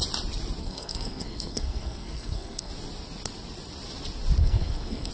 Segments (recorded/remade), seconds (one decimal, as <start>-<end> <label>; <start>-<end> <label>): 0.0-0.6 recorded; 0.6-2.7 remade; 2.7-4.4 recorded; 4.4-5.1 remade